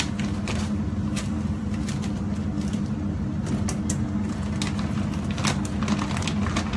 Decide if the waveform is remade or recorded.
recorded